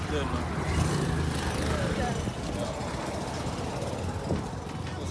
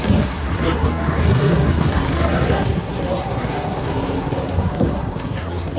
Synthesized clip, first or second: second